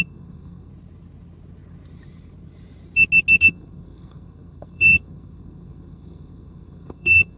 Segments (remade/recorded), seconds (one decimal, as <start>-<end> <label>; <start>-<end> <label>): 0.0-0.7 remade; 0.7-3.4 recorded; 3.4-7.4 remade